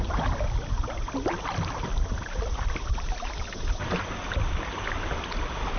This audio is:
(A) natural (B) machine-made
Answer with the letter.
A